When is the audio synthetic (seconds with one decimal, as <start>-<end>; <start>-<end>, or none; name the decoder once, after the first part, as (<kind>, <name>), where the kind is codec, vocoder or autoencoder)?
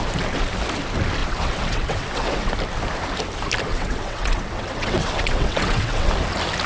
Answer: 1.2-2.5 (vocoder, WaveNeXt); 3.7-6.1